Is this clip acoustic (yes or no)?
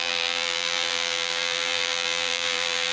no